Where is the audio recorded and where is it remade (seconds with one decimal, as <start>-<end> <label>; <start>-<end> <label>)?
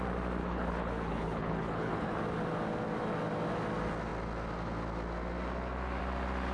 0.0-0.4 recorded; 0.4-2.2 remade; 2.2-6.5 recorded